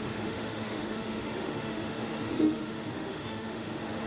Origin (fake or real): fake